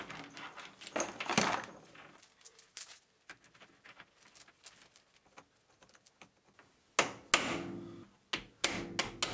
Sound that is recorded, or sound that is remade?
recorded